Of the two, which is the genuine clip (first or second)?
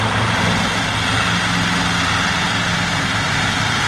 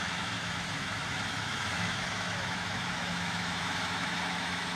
first